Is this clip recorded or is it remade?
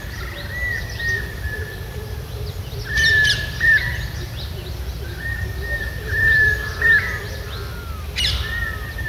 recorded